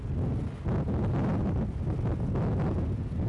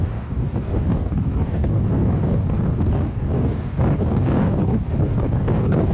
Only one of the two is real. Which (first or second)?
first